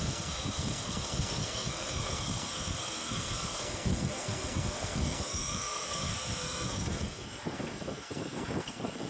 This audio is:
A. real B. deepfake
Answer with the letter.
B